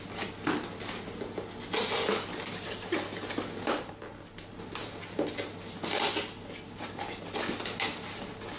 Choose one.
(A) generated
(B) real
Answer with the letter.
B